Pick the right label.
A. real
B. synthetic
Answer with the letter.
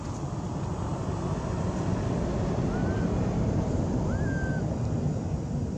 A